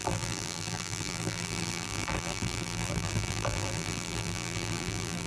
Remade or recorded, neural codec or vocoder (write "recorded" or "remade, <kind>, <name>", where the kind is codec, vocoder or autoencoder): remade, vocoder, BigVGAN v2